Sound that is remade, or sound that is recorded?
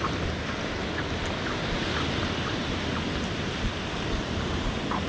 recorded